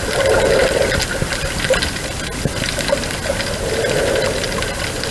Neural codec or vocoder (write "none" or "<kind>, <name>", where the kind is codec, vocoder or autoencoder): none